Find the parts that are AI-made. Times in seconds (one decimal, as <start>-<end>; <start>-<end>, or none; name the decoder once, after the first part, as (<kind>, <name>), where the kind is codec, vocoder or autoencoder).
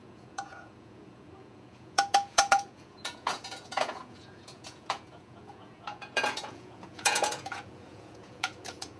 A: 0.0-9.0 (vocoder, Vocos)